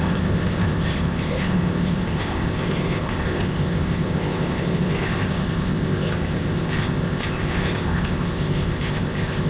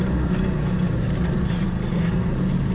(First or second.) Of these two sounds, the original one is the second